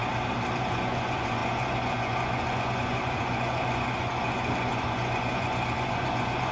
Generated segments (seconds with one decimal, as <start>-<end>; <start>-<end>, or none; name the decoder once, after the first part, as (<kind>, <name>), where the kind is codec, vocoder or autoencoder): 0.6-6.5 (vocoder, Vocos)